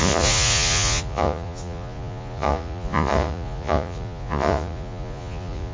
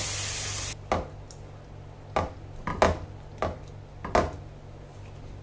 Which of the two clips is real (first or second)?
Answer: second